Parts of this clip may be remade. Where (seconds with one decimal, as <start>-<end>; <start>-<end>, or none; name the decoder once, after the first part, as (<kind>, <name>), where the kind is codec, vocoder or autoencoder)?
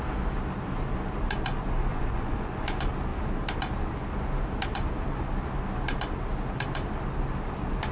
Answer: 1.9-2.6 (vocoder, Vocos)